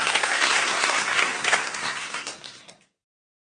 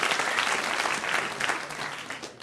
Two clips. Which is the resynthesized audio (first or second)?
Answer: first